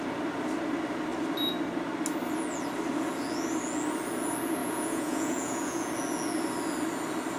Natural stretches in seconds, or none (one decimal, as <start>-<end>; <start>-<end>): 0.0-4.6; 5.9-7.4

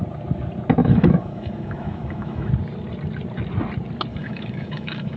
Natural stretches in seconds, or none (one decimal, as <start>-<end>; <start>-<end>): 0.0-0.8; 2.5-4.1

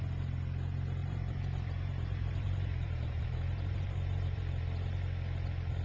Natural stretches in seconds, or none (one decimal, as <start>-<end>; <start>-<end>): 0.0-1.0; 4.5-5.8